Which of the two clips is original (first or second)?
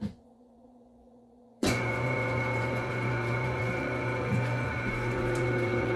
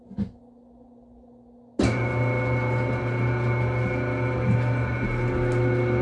second